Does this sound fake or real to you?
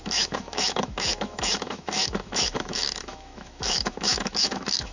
fake